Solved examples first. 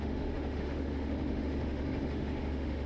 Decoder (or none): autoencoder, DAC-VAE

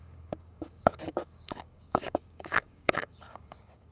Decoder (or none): codec, DAC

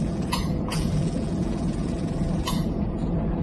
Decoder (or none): vocoder, Vocos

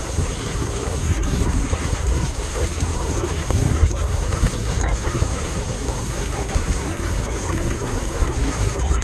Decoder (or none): codec, SNAC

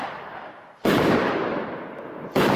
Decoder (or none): none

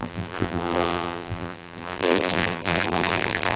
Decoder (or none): vocoder, BigVGAN v2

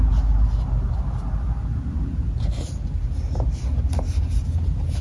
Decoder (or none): none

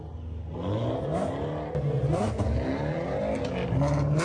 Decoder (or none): none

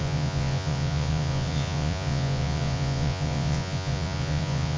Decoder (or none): vocoder, Vocos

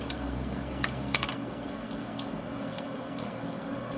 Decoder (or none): codec, SNAC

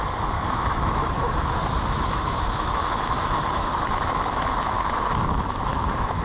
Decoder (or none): autoencoder, DAC-VAE